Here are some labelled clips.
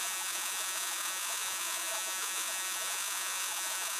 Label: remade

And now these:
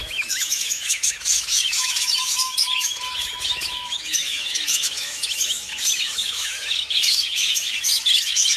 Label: remade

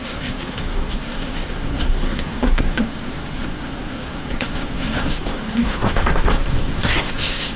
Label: remade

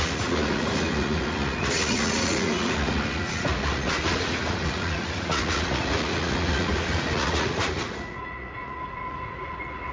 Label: remade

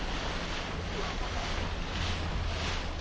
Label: recorded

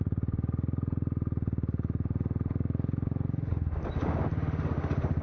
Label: recorded